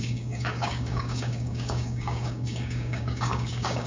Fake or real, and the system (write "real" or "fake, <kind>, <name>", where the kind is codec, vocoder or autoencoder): fake, codec, DAC